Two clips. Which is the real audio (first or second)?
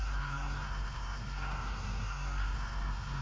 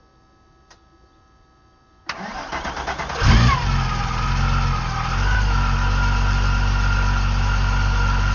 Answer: second